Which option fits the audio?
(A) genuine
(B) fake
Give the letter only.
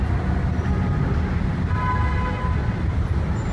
A